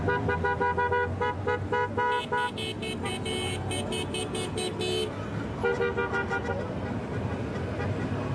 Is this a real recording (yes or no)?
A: yes